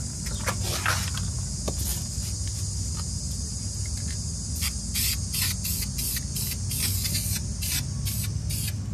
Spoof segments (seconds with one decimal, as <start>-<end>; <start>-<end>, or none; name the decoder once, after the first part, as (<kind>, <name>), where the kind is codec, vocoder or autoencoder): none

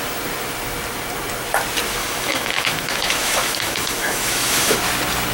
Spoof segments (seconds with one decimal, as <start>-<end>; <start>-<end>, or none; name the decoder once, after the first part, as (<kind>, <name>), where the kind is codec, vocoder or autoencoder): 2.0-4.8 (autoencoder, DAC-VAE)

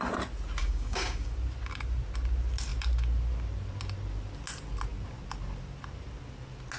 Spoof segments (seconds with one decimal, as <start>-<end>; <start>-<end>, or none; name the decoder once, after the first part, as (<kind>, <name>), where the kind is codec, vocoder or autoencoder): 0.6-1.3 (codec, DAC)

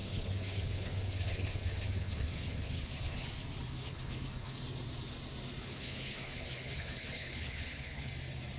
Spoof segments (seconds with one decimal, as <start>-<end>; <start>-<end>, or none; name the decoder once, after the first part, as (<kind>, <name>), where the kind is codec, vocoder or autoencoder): 0.0-3.3 (codec, HILCodec); 3.8-4.6; 5.6-8.1

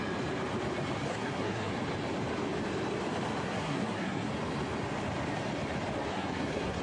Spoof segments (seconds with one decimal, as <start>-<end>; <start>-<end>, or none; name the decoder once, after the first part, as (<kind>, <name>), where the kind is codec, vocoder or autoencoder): 1.1-1.7 (codec, SNAC); 3.4-4.3; 6.1-6.8

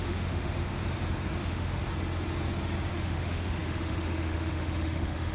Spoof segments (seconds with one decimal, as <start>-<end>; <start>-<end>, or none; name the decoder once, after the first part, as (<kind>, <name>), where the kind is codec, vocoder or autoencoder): 0.0-0.7 (autoencoder, DAC-VAE); 1.4-1.8; 2.9-5.3